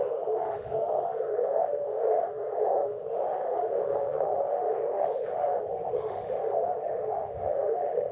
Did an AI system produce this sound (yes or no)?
yes